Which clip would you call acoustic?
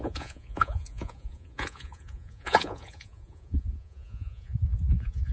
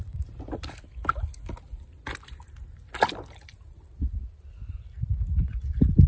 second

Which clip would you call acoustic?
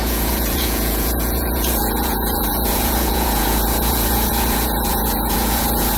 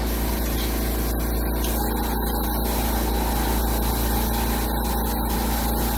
second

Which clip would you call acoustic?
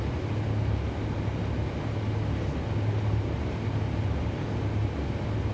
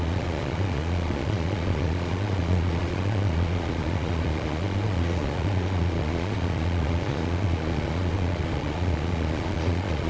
first